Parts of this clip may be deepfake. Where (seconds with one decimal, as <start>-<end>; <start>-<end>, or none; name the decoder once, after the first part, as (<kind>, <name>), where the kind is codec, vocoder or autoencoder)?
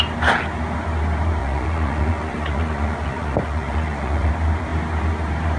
1.4-4.3 (vocoder, Vocos)